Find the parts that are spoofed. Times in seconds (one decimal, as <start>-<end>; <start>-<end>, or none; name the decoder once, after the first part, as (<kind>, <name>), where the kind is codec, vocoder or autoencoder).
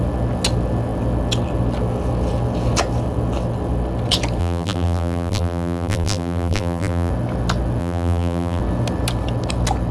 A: 4.4-7.1 (vocoder, BigVGAN v2); 7.8-8.6